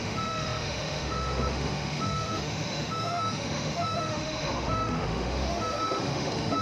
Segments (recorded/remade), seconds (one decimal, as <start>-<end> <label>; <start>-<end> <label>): 0.0-6.6 remade

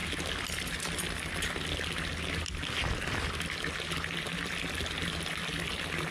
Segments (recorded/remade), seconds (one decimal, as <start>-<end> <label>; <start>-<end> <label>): 0.0-6.1 recorded

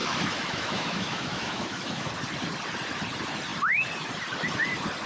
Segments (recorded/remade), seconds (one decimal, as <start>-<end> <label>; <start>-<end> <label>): 0.0-2.1 remade; 2.1-5.1 recorded